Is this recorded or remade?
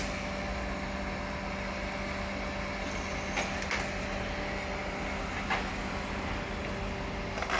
recorded